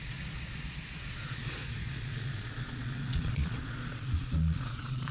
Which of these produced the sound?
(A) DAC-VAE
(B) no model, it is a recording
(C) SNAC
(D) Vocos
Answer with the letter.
D